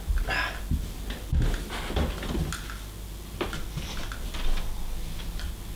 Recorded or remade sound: recorded